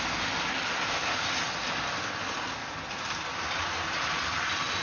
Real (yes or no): yes